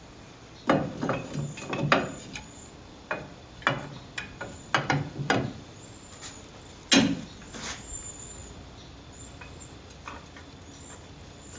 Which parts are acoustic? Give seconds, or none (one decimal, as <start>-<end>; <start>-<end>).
0.0-11.6